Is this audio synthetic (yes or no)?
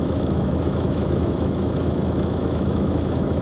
yes